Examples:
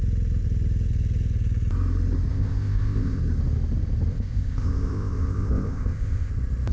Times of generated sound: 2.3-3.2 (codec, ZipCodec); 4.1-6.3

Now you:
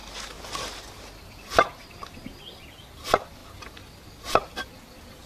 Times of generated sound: none

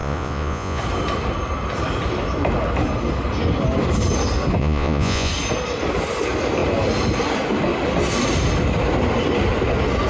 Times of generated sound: 0.0-0.8 (vocoder, Vocos); 4.6-5.3

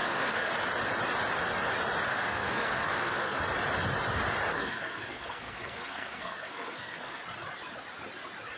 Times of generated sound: 0.0-0.5 (codec, SNAC); 2.1-3.4; 4.5-7.2

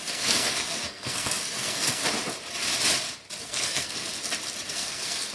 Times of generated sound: 0.0-2.0 (codec, SNAC); 3.4-4.1; 4.7-5.3

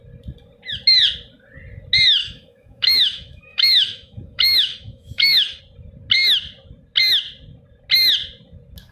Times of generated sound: 2.2-5.6 (autoencoder, DAC-VAE)

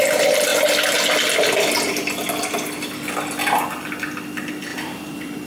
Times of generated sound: 4.7-5.5 (vocoder, BigVGAN v2)